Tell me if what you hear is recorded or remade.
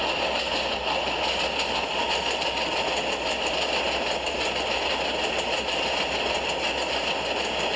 recorded